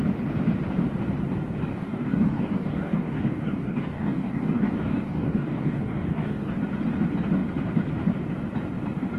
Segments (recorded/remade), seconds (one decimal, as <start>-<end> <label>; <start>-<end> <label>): 0.0-1.7 recorded; 1.7-6.5 remade; 6.5-9.2 recorded